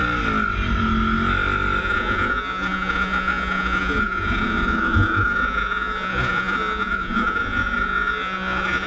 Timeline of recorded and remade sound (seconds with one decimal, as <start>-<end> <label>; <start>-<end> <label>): 0.0-1.8 recorded; 1.8-8.9 remade